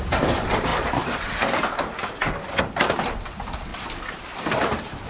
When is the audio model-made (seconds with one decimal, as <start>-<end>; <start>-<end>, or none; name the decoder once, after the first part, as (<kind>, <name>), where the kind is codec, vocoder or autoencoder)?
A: 0.0-0.7 (vocoder, BigVGAN v2); 2.6-5.1